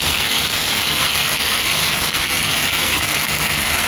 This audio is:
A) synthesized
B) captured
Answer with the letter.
A